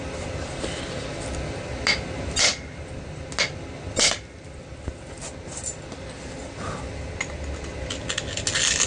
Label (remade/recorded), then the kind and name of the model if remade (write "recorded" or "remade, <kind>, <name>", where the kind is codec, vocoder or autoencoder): recorded